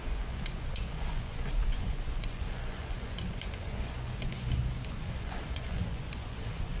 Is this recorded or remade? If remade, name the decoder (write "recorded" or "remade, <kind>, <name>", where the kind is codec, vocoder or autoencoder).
remade, vocoder, Vocos